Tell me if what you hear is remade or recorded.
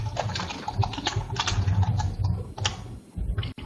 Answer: recorded